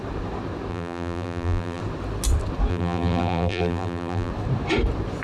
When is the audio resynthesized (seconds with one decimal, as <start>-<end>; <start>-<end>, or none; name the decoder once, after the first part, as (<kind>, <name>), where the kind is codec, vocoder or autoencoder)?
0.7-1.8 (vocoder, BigVGAN v2); 2.7-4.3